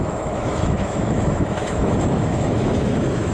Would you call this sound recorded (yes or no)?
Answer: no